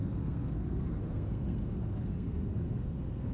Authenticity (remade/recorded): remade